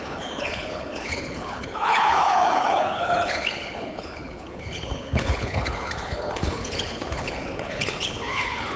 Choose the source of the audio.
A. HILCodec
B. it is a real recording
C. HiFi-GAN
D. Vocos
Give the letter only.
A